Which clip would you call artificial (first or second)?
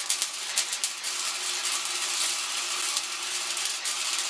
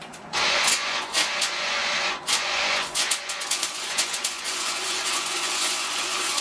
second